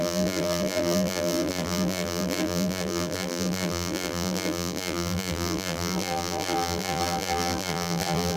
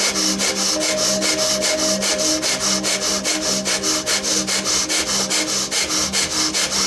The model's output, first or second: first